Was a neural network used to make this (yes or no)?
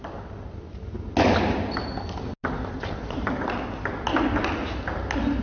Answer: no